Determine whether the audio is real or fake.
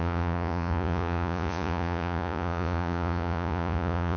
fake